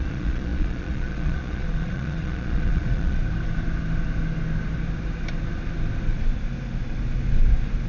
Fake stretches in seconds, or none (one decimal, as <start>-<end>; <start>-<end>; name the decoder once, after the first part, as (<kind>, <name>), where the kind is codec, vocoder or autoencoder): 0.0-3.2 (vocoder, Vocos)